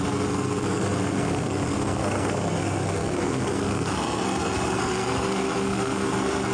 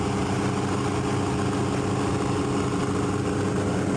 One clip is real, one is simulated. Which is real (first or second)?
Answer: second